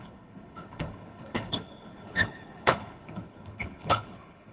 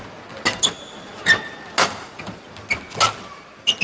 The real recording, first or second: second